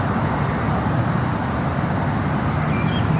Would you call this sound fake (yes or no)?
no